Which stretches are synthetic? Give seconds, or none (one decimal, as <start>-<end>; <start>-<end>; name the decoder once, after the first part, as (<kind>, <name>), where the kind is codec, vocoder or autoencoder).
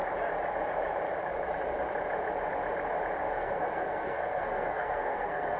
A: 3.2-5.6 (codec, SNAC)